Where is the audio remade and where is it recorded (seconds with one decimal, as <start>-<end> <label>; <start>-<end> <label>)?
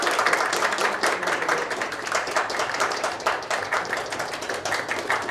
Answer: 0.0-0.8 recorded; 0.8-4.0 remade; 4.0-5.3 recorded